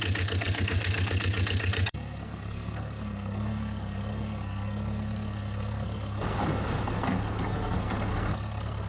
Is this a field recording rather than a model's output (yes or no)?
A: no